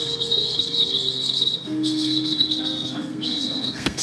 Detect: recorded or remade remade